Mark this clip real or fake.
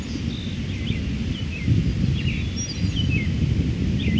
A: real